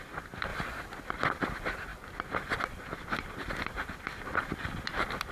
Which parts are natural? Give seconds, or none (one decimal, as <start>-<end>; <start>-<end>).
0.0-5.3